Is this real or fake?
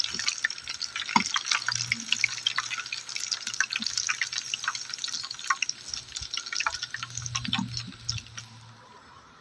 real